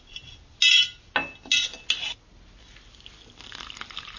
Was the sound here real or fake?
real